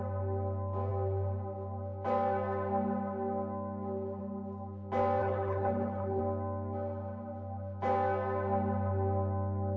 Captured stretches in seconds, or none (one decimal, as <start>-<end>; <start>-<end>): 0.0-5.2; 6.2-9.8